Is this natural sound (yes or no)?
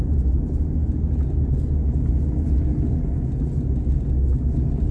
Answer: yes